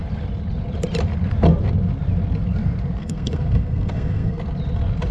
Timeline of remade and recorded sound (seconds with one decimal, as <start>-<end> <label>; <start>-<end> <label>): 0.0-3.0 recorded; 3.0-4.4 remade; 4.4-5.1 recorded